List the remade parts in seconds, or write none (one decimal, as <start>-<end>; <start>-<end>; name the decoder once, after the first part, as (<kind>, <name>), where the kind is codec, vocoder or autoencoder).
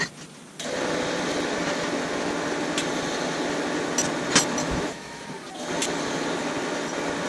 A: 4.6-5.2 (autoencoder, DAC-VAE)